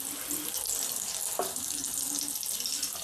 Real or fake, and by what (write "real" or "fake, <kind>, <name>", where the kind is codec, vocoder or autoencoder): real